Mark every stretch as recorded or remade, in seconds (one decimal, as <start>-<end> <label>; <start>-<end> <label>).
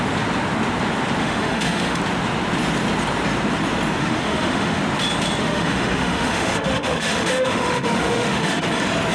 0.0-1.2 recorded; 1.2-2.0 remade; 2.0-4.0 recorded; 4.0-4.8 remade; 4.8-5.4 recorded; 5.4-8.6 remade; 8.6-9.1 recorded